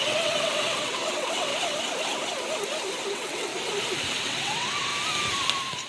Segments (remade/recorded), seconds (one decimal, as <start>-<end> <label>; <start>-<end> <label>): 0.0-1.5 remade; 1.5-3.1 recorded; 3.1-3.5 remade; 3.5-4.2 recorded; 4.2-4.9 remade; 4.9-5.9 recorded